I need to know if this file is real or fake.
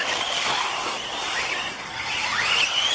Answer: real